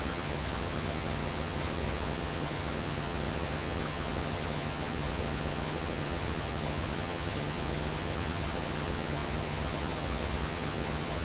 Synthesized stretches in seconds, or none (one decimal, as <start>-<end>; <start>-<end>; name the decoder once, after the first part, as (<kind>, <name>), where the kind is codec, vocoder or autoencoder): 0.0-11.2 (vocoder, HiFi-GAN)